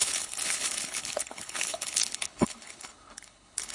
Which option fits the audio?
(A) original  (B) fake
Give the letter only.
B